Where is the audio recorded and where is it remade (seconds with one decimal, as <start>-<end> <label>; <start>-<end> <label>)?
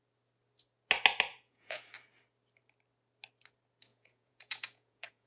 0.0-1.3 recorded; 1.3-1.9 remade; 1.9-3.9 recorded; 3.9-5.3 remade